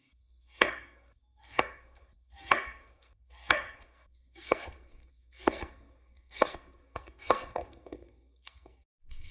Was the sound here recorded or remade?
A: remade